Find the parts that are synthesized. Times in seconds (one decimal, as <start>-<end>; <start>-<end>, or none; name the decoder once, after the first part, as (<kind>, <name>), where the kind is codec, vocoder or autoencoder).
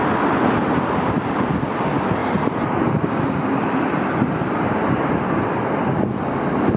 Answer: 2.2-6.3 (vocoder, BigVGAN v2)